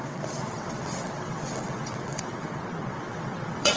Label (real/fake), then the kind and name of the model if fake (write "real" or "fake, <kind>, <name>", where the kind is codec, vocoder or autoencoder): fake, vocoder, WaveNeXt